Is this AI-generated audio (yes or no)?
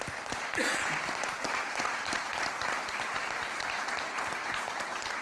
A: no